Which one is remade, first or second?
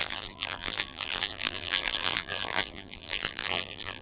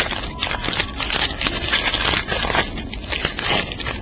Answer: first